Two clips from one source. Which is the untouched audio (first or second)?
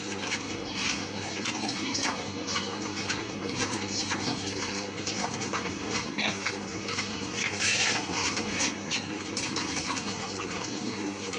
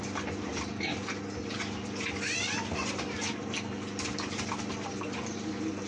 second